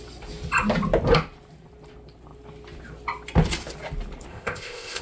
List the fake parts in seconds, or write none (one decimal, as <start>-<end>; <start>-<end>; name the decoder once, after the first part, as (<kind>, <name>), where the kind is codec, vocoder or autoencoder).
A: 4.3-5.0 (codec, ZipCodec)